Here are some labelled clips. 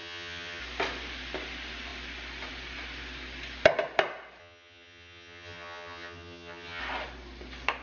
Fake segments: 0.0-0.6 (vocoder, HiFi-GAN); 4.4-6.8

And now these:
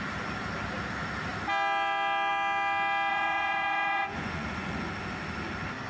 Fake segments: 3.1-4.9 (vocoder, Vocos)

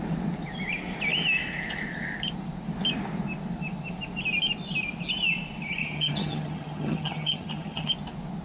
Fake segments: 5.8-7.9 (vocoder, HiFi-GAN)

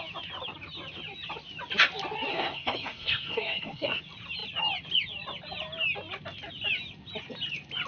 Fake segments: 2.3-4.0 (codec, SNAC)